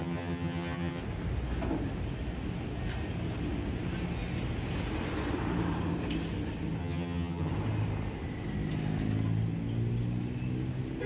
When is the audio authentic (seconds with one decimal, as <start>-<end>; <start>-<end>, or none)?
1.0-6.8; 7.5-11.1